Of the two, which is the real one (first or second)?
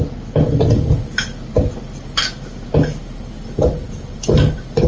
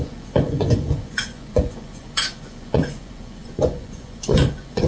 first